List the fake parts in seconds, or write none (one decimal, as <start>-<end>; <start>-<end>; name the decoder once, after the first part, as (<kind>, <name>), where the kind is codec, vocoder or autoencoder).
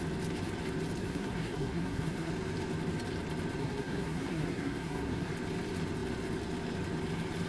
1.0-2.3 (codec, SNAC); 3.6-5.3